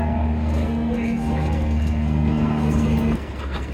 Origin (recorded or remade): remade